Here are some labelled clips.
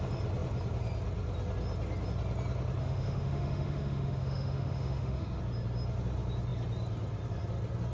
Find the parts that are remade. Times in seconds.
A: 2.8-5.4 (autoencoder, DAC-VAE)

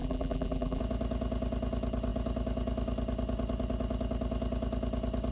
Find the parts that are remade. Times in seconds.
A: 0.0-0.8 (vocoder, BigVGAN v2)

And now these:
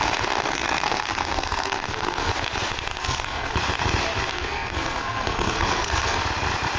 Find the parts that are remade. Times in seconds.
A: 0.4-2.3 (codec, SNAC); 2.9-3.5; 4.3-6.2

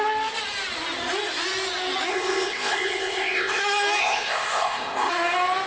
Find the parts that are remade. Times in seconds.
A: 2.1-3.6 (codec, ZipCodec); 4.0-5.1